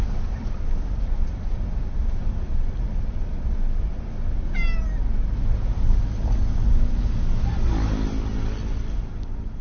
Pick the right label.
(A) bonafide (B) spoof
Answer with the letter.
A